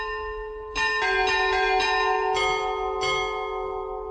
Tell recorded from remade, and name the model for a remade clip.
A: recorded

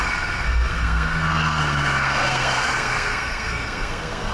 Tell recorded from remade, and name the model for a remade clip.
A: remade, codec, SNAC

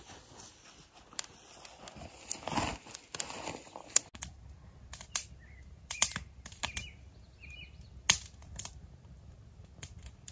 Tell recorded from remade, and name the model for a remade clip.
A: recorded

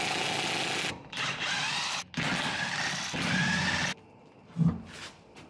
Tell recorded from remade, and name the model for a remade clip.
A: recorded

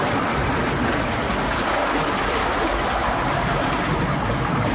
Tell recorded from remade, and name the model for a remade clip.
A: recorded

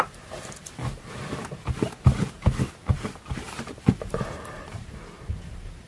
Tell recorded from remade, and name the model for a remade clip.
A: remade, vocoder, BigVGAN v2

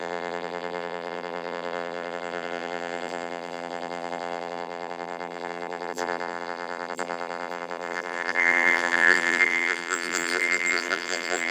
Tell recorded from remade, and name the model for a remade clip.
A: remade, vocoder, BigVGAN v2